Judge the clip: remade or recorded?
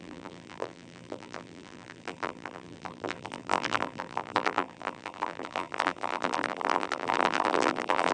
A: remade